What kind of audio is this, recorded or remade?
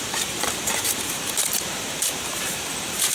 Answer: remade